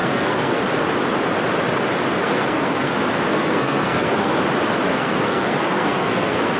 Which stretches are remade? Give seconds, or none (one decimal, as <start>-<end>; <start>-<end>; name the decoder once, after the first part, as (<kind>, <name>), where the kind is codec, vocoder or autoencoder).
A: 0.0-0.6 (codec, SNAC); 2.2-2.9; 3.3-4.4; 4.9-6.6